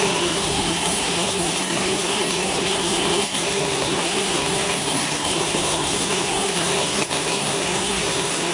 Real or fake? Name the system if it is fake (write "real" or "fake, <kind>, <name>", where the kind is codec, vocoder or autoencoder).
fake, codec, SNAC